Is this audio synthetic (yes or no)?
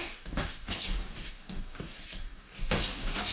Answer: yes